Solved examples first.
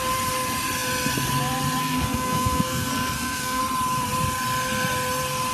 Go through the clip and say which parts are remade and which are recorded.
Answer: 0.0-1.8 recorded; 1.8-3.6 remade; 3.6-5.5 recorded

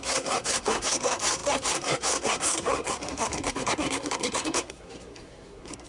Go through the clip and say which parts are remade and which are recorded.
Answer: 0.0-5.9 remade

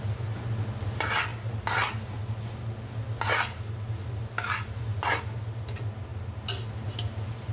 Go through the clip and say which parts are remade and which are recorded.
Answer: 0.0-7.5 recorded